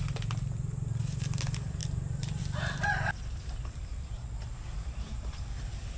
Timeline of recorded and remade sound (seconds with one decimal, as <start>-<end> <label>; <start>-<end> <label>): 0.0-1.8 recorded; 1.8-2.4 remade; 2.4-3.8 recorded; 3.8-5.4 remade; 5.4-6.0 recorded